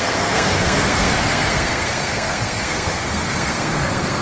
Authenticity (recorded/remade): remade